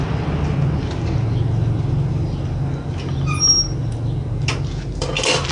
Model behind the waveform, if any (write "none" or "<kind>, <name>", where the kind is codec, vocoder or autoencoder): none